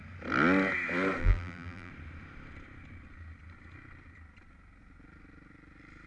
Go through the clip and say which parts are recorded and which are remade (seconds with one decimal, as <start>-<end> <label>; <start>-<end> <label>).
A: 0.0-1.2 recorded; 1.2-1.9 remade; 1.9-6.1 recorded